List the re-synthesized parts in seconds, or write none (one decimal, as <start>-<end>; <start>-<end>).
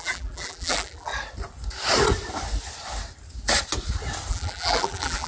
0.0-1.1; 4.3-5.3